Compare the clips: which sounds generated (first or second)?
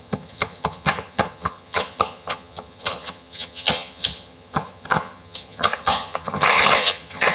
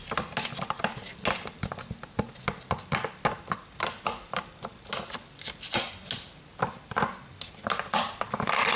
first